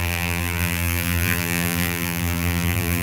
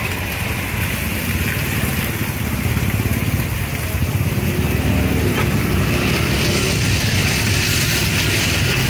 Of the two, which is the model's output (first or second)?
first